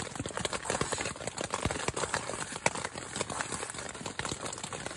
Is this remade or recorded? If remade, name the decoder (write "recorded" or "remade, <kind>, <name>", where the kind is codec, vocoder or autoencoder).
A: recorded